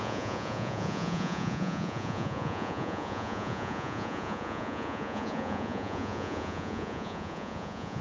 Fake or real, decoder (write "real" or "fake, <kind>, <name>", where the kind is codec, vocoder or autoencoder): fake, vocoder, Vocos